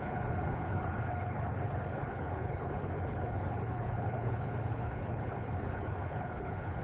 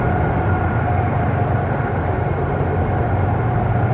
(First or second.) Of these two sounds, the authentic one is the second